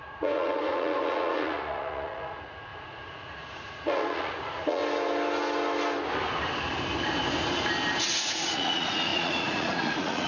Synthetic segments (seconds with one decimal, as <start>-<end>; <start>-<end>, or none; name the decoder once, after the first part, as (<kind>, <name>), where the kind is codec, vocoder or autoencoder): 0.0-4.8 (vocoder, Vocos); 8.0-10.3